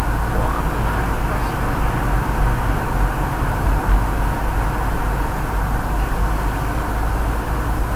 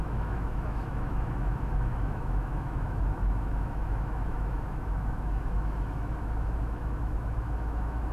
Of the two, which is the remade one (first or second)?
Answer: second